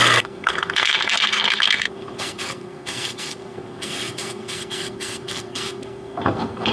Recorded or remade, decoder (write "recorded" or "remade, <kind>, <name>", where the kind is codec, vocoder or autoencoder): remade, codec, SNAC